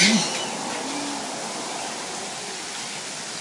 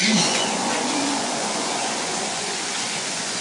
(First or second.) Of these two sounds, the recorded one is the first